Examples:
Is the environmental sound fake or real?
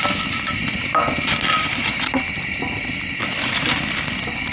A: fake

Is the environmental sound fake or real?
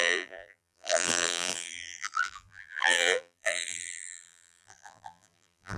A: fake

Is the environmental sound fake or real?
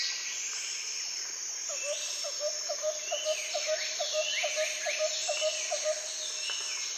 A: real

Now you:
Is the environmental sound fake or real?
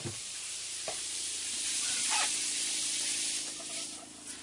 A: fake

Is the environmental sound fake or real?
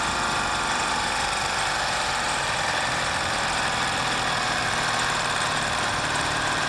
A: fake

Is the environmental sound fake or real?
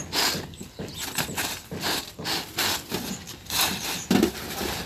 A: real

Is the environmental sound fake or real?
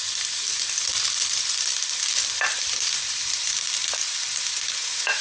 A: fake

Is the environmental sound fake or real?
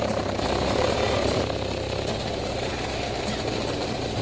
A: fake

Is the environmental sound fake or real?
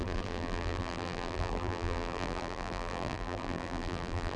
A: fake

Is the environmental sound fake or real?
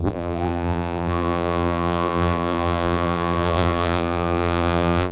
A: fake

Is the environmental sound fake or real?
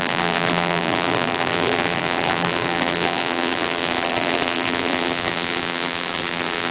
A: fake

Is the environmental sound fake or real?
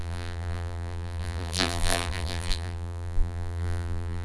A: fake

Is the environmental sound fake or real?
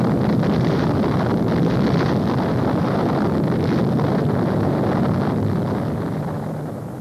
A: fake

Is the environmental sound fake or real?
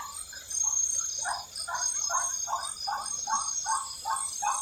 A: fake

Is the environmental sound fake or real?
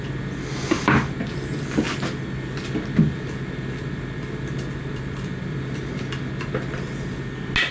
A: real